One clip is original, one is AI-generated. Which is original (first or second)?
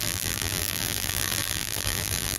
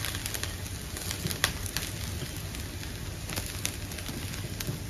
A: second